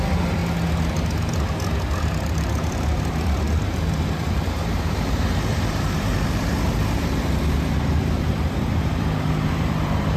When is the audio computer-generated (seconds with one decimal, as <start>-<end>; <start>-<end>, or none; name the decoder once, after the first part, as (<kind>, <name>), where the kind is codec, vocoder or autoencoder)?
0.0-0.4 (vocoder, BigVGAN v2); 2.0-10.2